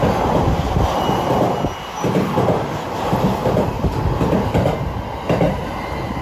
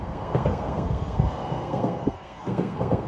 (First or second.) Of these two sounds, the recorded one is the first